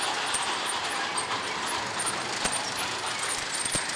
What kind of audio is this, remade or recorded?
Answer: recorded